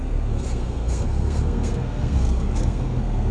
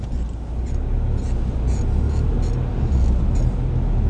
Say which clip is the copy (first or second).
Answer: first